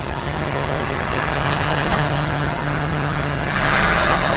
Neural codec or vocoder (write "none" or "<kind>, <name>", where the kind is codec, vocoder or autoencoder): vocoder, HiFi-GAN